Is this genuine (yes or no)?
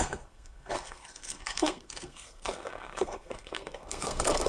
no